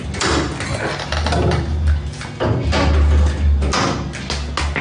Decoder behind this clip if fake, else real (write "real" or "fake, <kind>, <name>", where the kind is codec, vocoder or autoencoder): real